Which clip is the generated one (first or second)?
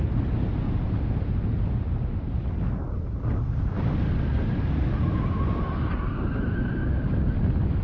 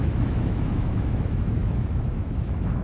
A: second